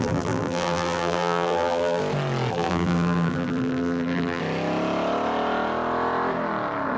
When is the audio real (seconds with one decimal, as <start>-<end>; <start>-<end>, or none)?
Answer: 2.0-2.5; 4.4-7.0